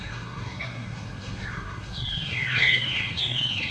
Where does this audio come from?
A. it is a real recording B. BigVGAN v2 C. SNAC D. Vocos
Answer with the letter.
C